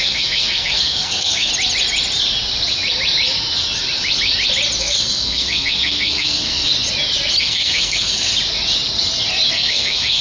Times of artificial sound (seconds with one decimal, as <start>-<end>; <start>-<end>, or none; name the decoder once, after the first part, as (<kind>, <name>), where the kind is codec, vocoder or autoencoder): 0.0-1.5 (codec, SNAC); 4.8-6.7; 7.4-8.3; 9.5-10.2